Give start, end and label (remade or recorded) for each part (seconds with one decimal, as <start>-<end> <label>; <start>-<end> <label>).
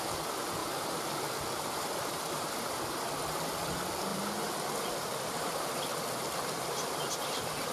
0.0-0.6 recorded; 0.6-2.5 remade; 2.5-4.1 recorded; 4.1-7.7 remade